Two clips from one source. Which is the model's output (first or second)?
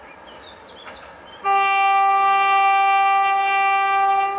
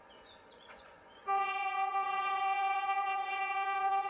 second